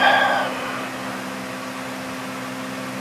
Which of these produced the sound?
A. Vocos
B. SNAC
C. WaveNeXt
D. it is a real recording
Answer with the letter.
D